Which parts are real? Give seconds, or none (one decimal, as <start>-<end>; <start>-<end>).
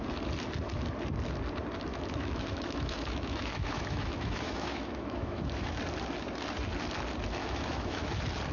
0.0-1.9; 5.8-7.4; 8.1-8.5